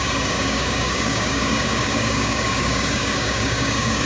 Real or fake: fake